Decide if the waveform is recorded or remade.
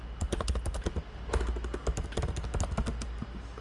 recorded